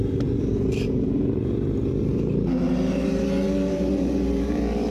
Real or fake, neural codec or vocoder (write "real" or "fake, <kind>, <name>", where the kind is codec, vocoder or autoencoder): fake, vocoder, BigVGAN v2